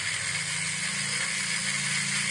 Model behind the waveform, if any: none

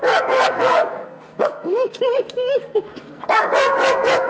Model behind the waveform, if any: codec, SNAC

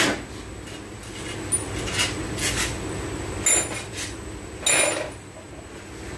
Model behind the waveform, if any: none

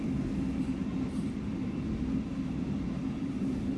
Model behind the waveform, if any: none